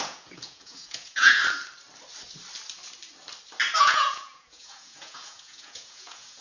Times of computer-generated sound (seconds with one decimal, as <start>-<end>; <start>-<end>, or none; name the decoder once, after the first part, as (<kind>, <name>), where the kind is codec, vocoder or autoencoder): 0.0-1.4 (vocoder, Vocos); 3.8-6.4